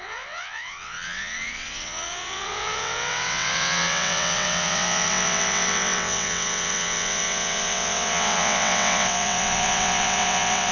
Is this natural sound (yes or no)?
no